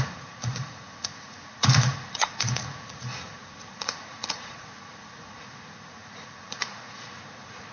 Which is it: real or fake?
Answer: fake